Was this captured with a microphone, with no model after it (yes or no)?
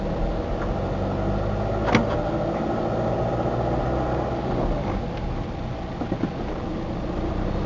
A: yes